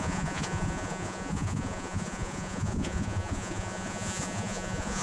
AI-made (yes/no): yes